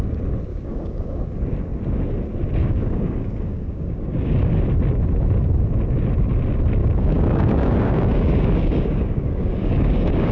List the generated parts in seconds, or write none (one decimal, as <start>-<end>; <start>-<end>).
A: 0.5-1.2; 2.6-4.5; 6.8-10.3